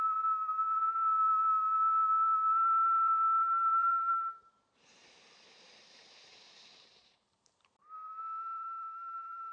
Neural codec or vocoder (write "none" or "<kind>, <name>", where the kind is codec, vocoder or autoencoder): vocoder, BigVGAN v2